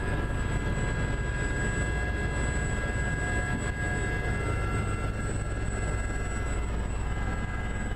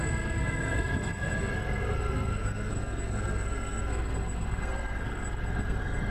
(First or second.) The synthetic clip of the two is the second